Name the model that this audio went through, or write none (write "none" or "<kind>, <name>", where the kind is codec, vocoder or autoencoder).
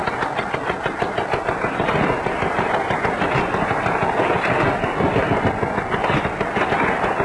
none